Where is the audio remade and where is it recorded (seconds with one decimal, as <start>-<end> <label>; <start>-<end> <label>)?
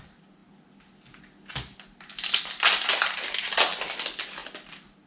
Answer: 0.0-5.1 recorded